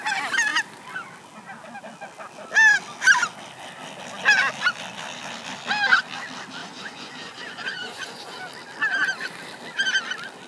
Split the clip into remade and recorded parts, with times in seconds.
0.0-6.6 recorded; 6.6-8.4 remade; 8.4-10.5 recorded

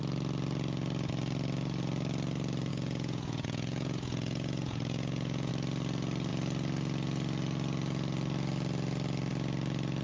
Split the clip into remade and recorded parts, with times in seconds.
0.0-2.7 recorded; 2.7-5.5 remade; 5.5-10.0 recorded

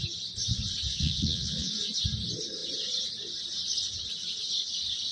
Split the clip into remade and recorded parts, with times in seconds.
0.0-0.9 recorded; 0.9-1.7 remade; 1.7-5.1 recorded

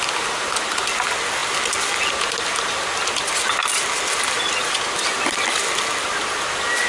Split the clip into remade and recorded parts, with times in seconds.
0.0-6.9 recorded

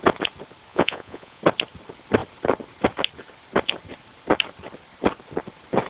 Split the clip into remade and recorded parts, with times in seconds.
0.0-0.7 recorded; 0.7-1.4 remade; 1.4-5.9 recorded